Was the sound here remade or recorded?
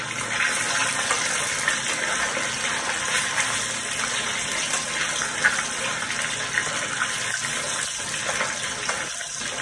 recorded